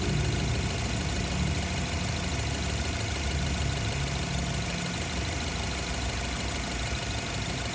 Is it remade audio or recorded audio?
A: recorded